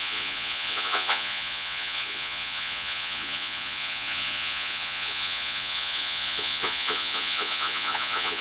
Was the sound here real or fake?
fake